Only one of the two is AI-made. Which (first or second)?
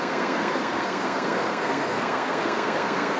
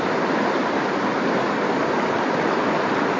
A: first